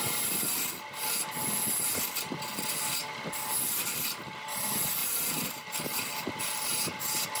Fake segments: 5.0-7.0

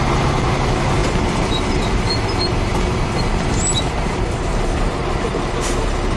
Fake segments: none

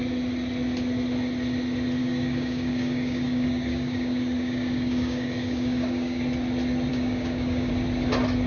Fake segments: 2.0-6.2; 6.9-7.7

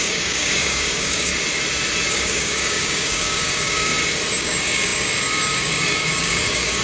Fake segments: 0.0-1.3; 2.1-3.9; 4.4-6.8